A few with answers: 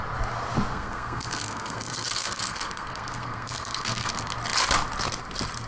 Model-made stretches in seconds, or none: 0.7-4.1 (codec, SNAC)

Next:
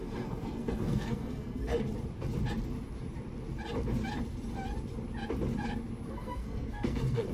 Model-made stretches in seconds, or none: 0.0-1.7 (codec, SNAC); 6.1-7.3

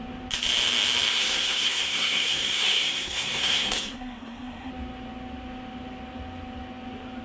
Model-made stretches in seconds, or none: 1.1-4.7 (codec, SNAC)

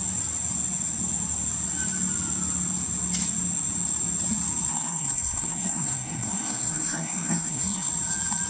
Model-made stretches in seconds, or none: 4.7-7.9 (codec, SNAC)

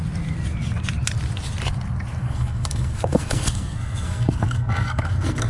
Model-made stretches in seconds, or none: 2.2-5.5 (codec, SNAC)

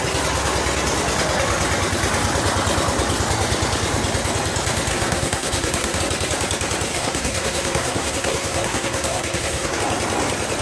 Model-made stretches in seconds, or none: 4.9-6.0 (codec, SNAC); 6.9-9.8

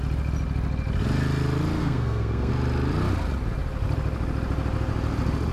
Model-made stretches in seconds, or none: 1.8-2.5 (codec, SNAC)

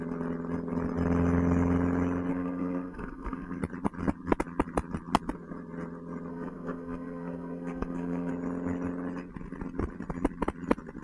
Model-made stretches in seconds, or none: 2.3-3.6 (codec, SNAC); 6.3-8.3